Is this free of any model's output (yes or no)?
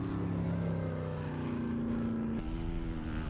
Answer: yes